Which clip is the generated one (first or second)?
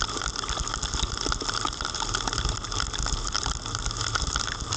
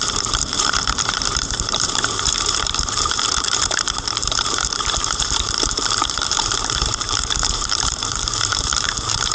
second